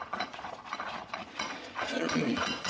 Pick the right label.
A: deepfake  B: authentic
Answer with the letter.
A